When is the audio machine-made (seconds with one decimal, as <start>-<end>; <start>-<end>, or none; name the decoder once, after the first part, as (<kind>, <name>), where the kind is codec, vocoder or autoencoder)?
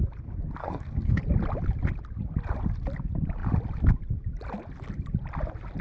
0.6-1.2 (codec, SNAC)